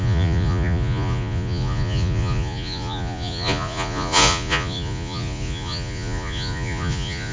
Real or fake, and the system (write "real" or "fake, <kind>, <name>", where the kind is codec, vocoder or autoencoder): fake, vocoder, Vocos